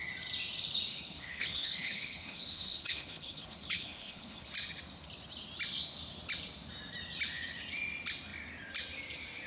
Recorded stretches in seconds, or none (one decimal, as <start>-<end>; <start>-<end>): 0.0-0.9; 4.5-9.5